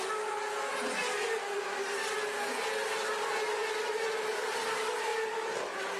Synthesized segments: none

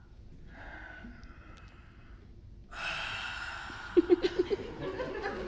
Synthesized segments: none

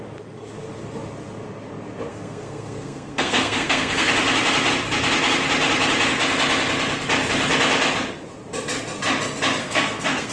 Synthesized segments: 2.1-4.1 (codec, SNAC); 9.6-10.3

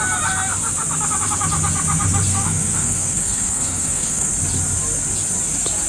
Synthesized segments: 2.3-4.3 (codec, SNAC)

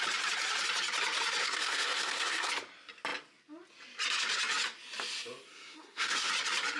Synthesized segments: 1.4-2.5 (codec, SNAC); 5.5-6.3